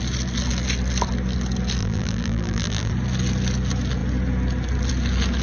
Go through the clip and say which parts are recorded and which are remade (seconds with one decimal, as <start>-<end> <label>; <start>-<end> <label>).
0.0-1.8 recorded; 1.8-2.9 remade; 2.9-5.4 recorded